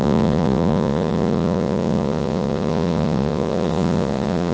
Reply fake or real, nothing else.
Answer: fake